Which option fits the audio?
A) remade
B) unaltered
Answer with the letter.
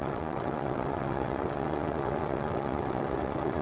A